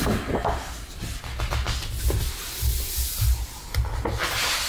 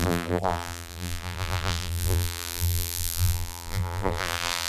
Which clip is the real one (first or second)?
first